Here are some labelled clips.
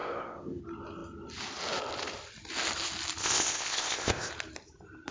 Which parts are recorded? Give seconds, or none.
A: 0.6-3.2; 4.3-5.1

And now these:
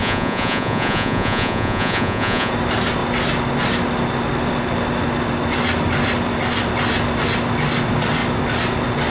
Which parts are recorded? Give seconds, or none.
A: 2.5-9.1

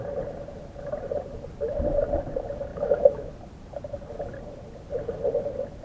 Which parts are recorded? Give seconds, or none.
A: 0.0-2.7; 3.3-5.8

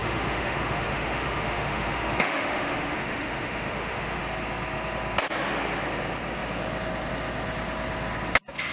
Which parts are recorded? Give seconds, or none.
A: 4.2-8.7

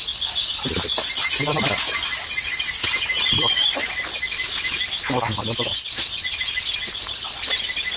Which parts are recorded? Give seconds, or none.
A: 0.0-8.0